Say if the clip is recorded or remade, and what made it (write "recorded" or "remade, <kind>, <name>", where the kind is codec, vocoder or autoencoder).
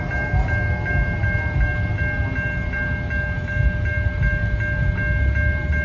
recorded